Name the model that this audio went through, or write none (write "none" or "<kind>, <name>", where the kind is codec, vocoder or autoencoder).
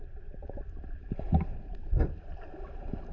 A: none